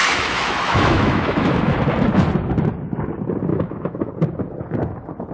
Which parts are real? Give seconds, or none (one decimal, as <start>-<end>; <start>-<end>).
1.8-3.5; 4.1-5.3